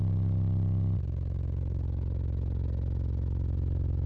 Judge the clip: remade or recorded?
recorded